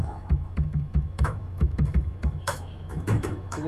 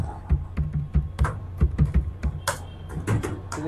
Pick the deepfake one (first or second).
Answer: first